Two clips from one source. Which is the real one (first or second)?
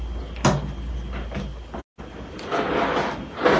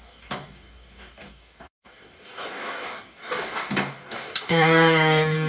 first